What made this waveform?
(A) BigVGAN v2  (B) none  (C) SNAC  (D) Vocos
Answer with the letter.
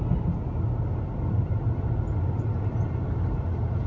B